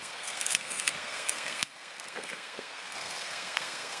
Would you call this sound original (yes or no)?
no